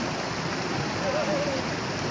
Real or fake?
real